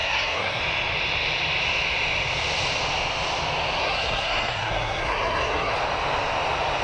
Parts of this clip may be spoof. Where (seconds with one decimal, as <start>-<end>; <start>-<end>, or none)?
0.0-0.6; 3.8-5.7